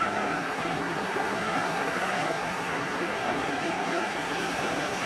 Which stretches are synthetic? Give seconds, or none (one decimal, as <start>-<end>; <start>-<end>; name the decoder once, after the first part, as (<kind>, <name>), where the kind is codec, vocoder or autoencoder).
0.0-5.1 (codec, SNAC)